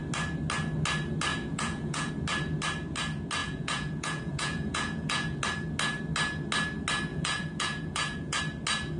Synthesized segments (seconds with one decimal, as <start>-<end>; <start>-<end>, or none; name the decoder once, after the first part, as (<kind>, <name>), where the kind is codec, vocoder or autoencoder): 1.3-2.1 (vocoder, Vocos); 3.4-5.4; 7.1-8.4

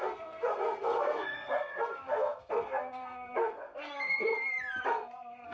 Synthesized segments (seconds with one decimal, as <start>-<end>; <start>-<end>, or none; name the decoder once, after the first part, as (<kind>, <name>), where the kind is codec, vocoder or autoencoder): 0.0-4.3 (codec, SNAC); 4.8-5.5

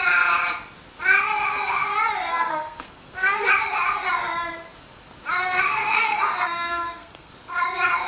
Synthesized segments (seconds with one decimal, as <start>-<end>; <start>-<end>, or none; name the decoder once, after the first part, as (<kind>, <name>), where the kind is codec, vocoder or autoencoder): 2.3-3.5 (codec, SNAC); 5.4-7.3